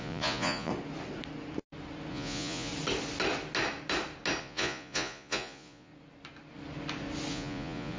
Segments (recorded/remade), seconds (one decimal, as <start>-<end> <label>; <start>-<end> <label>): 0.0-0.7 remade; 0.7-2.1 recorded; 2.1-2.7 remade; 2.7-4.4 recorded; 4.4-5.9 remade; 5.9-7.3 recorded; 7.3-8.0 remade